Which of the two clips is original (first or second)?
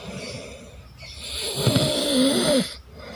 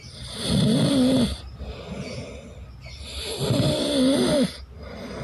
second